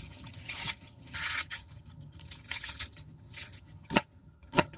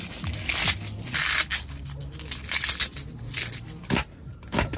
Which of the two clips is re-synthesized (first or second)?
first